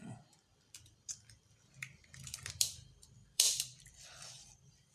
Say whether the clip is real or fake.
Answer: fake